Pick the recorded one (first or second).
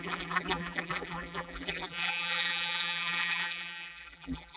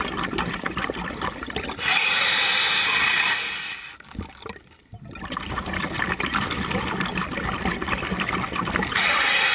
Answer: second